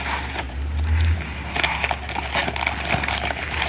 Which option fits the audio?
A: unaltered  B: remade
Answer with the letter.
A